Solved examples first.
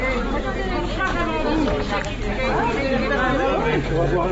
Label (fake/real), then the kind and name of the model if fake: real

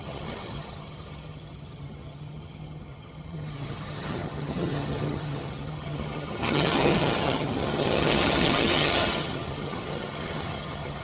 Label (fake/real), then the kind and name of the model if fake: fake, vocoder, HiFi-GAN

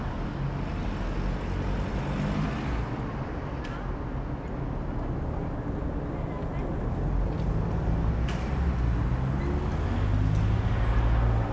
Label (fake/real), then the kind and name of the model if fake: real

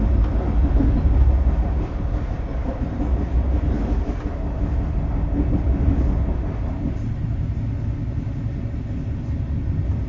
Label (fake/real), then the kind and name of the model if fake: real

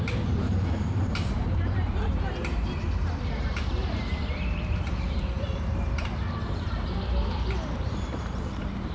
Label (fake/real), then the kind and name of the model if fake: fake, vocoder, BigVGAN v2